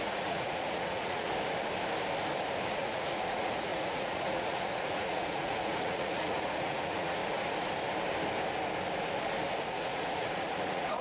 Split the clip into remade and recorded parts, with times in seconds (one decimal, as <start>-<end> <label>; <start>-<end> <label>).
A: 0.0-1.3 remade; 1.3-2.7 recorded; 2.7-7.2 remade; 7.2-9.6 recorded; 9.6-11.0 remade